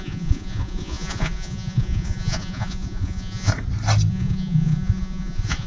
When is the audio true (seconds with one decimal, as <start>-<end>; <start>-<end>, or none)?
3.5-4.1